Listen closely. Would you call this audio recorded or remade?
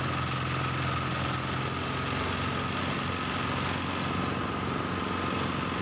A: recorded